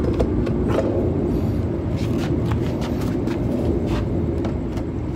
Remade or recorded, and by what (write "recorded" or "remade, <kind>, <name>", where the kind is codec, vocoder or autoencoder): recorded